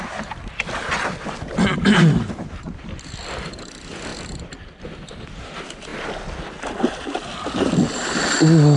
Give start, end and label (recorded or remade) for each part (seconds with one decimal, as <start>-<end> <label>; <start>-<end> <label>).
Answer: 0.0-8.8 recorded